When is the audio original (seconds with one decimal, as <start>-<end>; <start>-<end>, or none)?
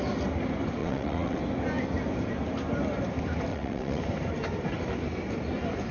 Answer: 0.0-0.8; 1.4-3.5; 4.0-5.9